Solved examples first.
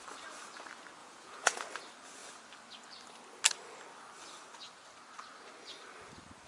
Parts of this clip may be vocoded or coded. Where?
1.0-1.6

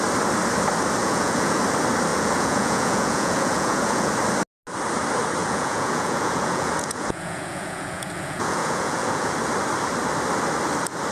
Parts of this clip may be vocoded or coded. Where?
1.0-1.6; 2.1-4.1; 5.4-9.3